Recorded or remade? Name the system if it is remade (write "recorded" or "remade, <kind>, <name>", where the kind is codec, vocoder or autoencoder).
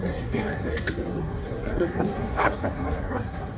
remade, codec, SNAC